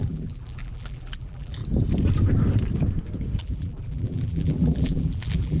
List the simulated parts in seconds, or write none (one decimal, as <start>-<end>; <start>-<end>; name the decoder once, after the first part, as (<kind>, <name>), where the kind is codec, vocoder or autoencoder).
0.0-1.6 (vocoder, BigVGAN v2); 3.4-5.6